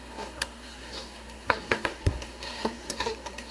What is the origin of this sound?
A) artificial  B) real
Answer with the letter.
A